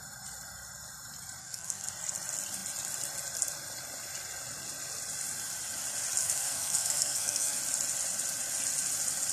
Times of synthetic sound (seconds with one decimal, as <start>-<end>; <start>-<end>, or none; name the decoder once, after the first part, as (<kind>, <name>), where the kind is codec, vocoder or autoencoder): 1.4-1.9 (codec, SNAC); 6.2-7.6